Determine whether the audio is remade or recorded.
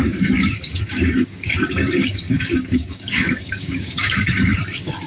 remade